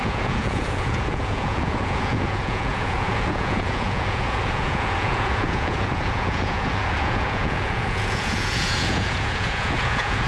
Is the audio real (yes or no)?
no